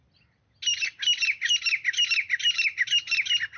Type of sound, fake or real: real